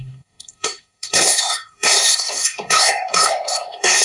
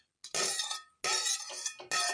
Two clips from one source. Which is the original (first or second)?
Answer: second